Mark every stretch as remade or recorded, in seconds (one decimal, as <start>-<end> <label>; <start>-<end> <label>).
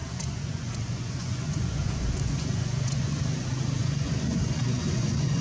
0.0-3.2 remade; 3.2-3.8 recorded; 3.8-5.4 remade